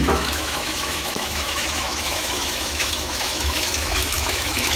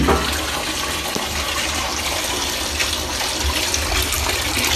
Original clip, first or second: second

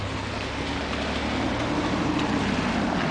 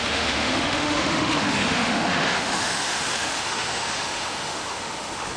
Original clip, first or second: first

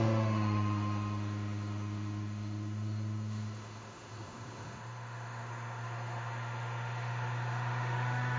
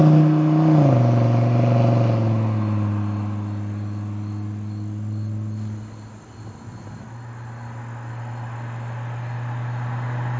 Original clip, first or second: second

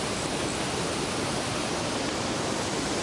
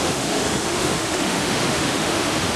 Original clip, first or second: first